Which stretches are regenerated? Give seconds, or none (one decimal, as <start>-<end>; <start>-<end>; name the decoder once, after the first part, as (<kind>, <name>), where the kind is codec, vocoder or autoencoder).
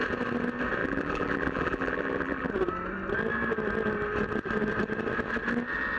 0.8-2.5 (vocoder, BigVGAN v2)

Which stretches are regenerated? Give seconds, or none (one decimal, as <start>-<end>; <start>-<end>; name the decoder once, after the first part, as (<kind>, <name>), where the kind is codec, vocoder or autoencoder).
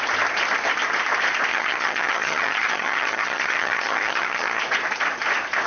1.5-4.6 (vocoder, HiFi-GAN)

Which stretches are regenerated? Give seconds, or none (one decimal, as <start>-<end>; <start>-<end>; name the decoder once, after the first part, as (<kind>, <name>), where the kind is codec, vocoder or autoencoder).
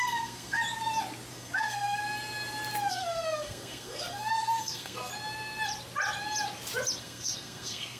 0.0-0.6 (codec, SNAC); 1.3-2.0; 2.9-5.1; 7.0-8.0